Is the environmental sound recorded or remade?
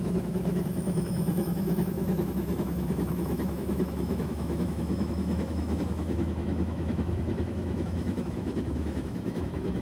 remade